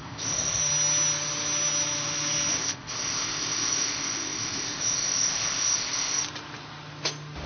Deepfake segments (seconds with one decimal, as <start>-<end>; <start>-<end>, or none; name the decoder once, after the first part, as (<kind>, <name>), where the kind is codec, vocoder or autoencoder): 0.0-0.6 (codec, ZipCodec); 2.5-6.2